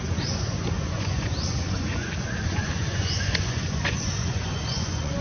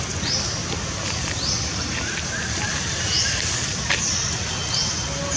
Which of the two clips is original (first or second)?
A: second